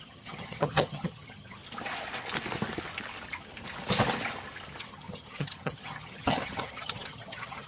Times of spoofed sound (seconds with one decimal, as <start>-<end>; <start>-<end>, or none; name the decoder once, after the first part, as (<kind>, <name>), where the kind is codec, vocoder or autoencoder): 0.0-1.6 (vocoder, HiFi-GAN); 4.8-7.7